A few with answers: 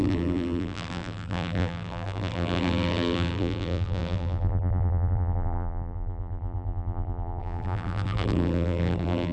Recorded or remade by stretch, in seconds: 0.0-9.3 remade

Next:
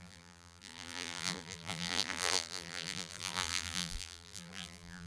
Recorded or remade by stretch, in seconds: 0.0-5.1 remade

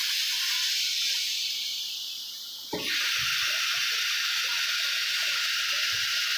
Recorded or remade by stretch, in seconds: 0.0-6.4 recorded

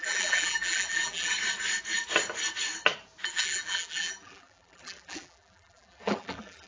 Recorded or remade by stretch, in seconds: 0.0-1.3 remade; 1.3-3.2 recorded; 3.2-6.7 remade

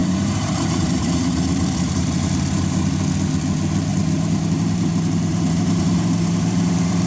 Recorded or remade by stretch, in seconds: 0.0-2.8 remade; 2.8-3.9 recorded; 3.9-7.1 remade